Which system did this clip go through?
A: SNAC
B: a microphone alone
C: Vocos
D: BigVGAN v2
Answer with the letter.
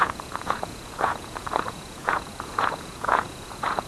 C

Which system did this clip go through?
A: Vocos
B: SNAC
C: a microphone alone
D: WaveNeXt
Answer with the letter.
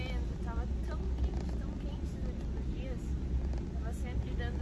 C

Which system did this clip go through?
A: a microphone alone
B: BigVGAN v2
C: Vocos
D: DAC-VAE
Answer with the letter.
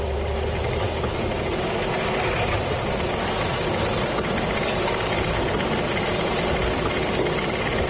A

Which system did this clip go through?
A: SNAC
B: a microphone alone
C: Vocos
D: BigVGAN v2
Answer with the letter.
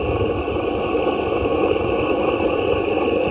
B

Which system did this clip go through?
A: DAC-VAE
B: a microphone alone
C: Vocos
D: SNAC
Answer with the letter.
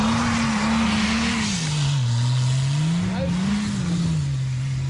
B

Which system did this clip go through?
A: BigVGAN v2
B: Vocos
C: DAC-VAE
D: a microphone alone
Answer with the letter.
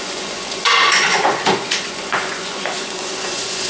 B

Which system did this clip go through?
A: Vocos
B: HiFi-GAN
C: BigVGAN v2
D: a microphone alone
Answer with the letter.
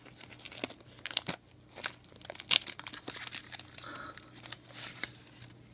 D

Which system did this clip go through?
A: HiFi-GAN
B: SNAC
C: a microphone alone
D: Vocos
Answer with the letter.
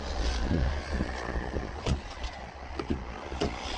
D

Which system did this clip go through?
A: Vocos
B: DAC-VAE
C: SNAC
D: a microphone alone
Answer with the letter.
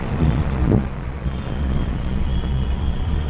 A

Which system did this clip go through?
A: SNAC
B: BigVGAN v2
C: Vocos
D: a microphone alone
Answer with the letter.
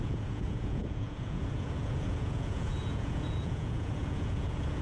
C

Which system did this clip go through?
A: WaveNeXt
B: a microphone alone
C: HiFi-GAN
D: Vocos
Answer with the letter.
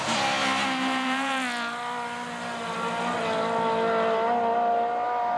B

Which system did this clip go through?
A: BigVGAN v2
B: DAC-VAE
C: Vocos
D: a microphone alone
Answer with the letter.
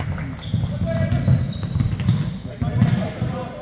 D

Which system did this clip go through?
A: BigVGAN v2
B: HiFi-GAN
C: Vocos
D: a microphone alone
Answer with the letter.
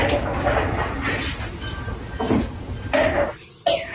D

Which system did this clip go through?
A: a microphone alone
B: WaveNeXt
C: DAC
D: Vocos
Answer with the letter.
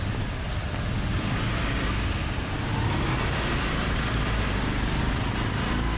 A